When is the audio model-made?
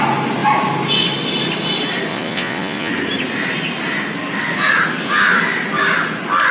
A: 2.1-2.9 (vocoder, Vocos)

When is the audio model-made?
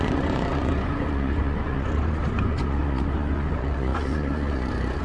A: 0.0-5.0 (vocoder, Vocos)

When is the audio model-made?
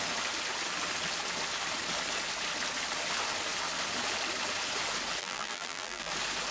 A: 5.2-6.1 (vocoder, BigVGAN v2)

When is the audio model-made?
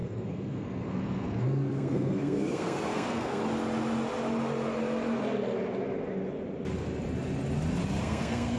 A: 0.0-3.4 (codec, SNAC); 8.0-8.6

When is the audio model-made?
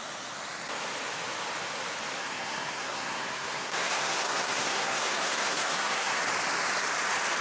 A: 2.2-6.2 (codec, SNAC)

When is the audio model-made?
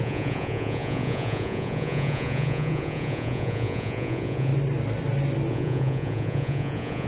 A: 0.0-4.5 (vocoder, Vocos); 5.5-7.1